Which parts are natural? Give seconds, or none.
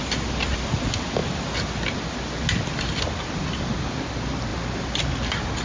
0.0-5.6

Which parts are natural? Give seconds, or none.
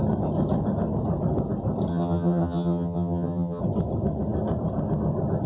0.0-1.9; 3.6-5.5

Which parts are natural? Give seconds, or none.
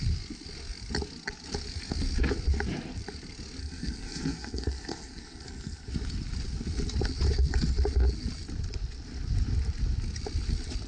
0.0-3.6; 5.9-10.9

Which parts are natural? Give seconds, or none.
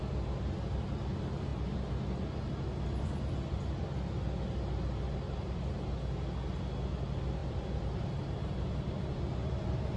0.0-7.4; 8.1-9.3